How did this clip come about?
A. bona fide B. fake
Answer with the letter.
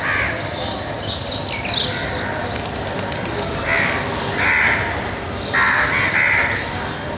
A